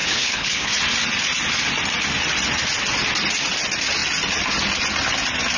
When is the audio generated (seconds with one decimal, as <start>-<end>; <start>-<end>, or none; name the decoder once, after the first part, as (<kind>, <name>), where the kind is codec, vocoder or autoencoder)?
0.0-0.7 (codec, HILCodec)